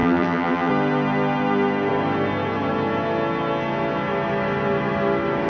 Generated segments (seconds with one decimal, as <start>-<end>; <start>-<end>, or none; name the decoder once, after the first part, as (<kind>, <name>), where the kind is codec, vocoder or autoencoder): 0.0-0.7 (vocoder, BigVGAN v2)